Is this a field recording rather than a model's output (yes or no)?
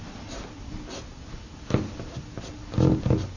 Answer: yes